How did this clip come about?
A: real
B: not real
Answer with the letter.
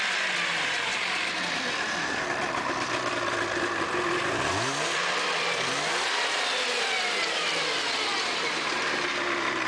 B